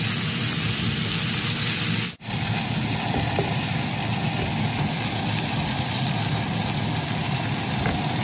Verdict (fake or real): real